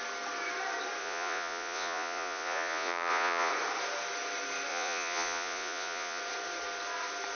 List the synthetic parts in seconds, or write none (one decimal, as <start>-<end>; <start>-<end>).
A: 1.0-3.5; 4.7-6.2